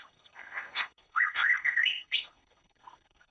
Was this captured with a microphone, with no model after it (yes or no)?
no